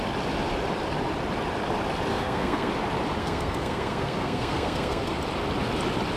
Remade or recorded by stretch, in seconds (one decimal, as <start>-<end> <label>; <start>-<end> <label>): 0.0-2.1 recorded; 2.1-2.7 remade; 2.7-3.2 recorded; 3.2-5.2 remade; 5.2-6.2 recorded